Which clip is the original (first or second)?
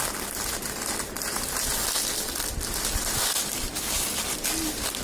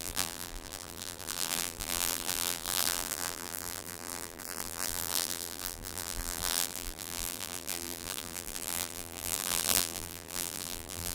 first